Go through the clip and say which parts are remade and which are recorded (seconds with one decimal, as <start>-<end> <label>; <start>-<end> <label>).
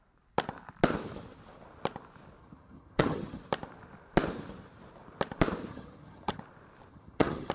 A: 0.0-2.4 recorded; 2.4-3.4 remade; 3.4-5.7 recorded; 5.7-6.4 remade; 6.4-6.9 recorded; 6.9-7.5 remade